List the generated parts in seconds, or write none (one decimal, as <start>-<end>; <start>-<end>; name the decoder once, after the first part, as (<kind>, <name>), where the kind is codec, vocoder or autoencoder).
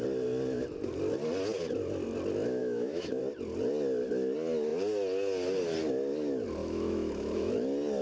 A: 2.6-3.2 (autoencoder, DAC-VAE); 6.6-7.5